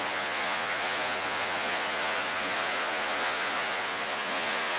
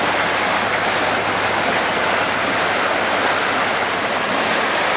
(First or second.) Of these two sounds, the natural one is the second